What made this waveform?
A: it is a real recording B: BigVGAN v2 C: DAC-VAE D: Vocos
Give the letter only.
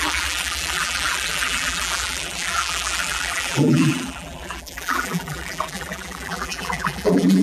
B